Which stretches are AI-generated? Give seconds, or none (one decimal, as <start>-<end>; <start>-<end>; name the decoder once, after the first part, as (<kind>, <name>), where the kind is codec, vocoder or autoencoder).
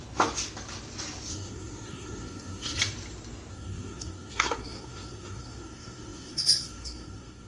1.3-2.8 (codec, SNAC); 3.5-7.5